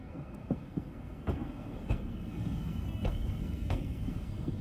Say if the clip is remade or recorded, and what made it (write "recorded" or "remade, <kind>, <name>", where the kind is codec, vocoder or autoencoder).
remade, codec, SNAC